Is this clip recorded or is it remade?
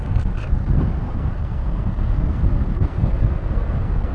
remade